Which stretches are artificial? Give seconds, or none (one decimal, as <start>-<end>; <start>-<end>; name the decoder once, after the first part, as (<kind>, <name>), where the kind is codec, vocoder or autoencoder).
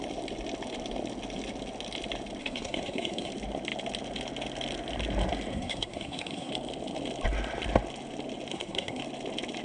2.4-3.3 (codec, SNAC); 5.5-6.5; 8.5-9.0